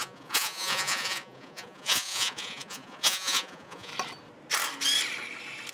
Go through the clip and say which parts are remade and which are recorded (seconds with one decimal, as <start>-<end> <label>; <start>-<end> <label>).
0.0-3.9 remade; 3.9-5.7 recorded